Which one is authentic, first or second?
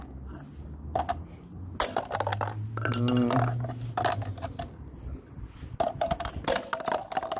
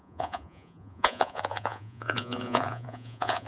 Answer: first